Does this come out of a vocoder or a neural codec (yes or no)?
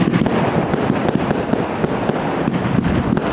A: no